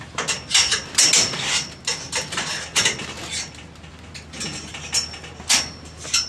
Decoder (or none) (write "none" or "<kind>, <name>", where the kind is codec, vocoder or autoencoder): none